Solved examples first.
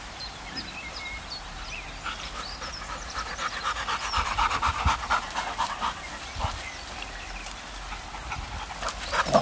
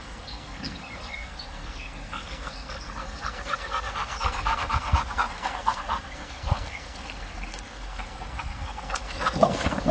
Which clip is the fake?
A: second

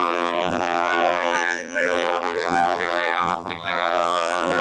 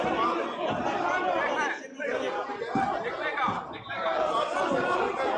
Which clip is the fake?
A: first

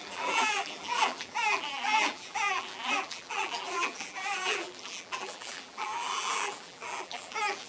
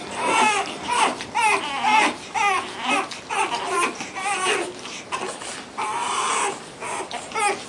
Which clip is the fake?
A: first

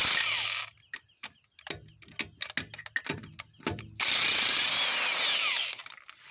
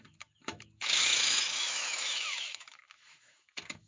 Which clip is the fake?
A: second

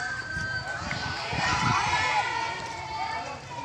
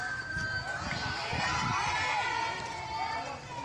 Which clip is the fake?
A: first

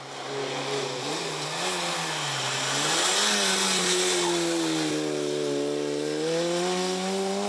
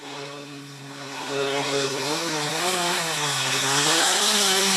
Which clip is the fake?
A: second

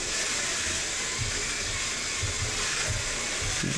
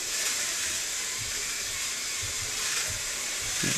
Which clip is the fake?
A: second